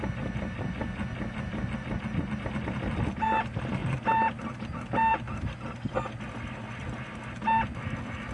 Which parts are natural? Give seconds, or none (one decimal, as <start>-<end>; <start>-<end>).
0.0-8.3